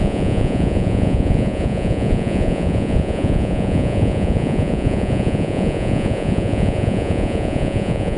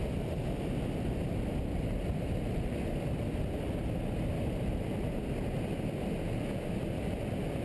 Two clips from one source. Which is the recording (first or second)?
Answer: second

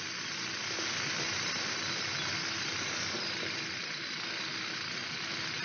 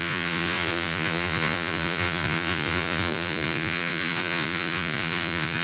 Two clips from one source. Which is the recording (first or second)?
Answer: first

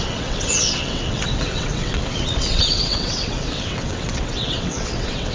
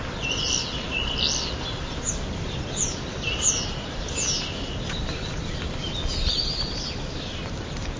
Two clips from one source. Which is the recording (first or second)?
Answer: second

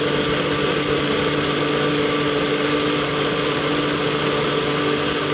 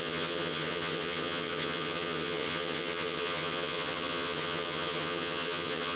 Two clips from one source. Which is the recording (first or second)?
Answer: first